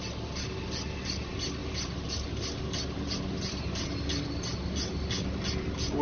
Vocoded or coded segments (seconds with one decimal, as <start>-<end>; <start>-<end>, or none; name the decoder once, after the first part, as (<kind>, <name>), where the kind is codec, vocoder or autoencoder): none